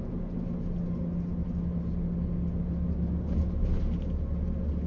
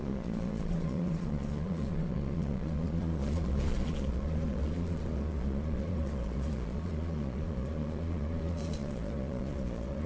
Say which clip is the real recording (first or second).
first